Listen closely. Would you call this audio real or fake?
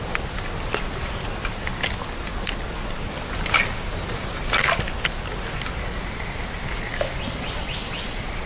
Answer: real